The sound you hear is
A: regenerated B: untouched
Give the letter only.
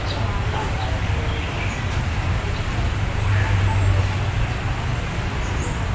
B